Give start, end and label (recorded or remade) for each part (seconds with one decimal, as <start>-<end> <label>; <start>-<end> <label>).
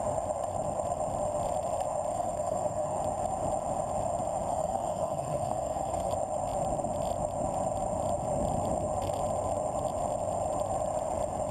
0.0-2.1 recorded; 2.1-3.0 remade; 3.0-4.5 recorded; 4.5-6.1 remade; 6.1-11.5 recorded